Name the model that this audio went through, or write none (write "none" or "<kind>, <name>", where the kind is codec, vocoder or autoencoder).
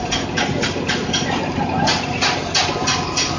none